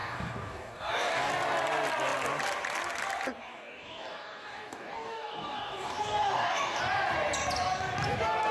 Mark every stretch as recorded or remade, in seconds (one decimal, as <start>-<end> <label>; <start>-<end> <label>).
0.0-1.3 remade; 1.3-3.4 recorded; 3.4-6.8 remade; 6.8-8.5 recorded